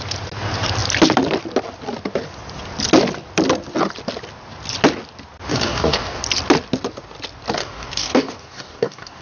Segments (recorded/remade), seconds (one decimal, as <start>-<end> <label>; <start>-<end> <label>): 0.0-5.5 recorded; 5.5-6.2 remade; 6.2-7.6 recorded; 7.6-9.2 remade

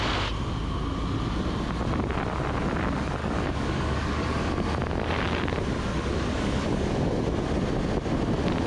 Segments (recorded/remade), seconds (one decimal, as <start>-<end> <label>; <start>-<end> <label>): 0.0-3.2 recorded; 3.2-4.5 remade; 4.5-5.9 recorded; 5.9-7.2 remade; 7.2-8.7 recorded

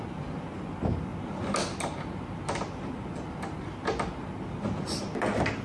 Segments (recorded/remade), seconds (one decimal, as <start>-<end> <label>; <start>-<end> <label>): 0.0-5.6 recorded

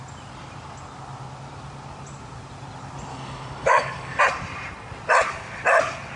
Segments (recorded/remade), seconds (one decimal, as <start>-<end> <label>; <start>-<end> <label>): 0.0-3.1 recorded; 3.1-4.2 remade; 4.2-6.2 recorded